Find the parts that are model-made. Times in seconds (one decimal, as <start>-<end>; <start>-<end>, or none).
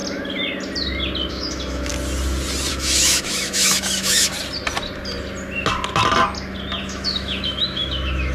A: 1.3-1.9; 2.7-4.3; 6.8-8.3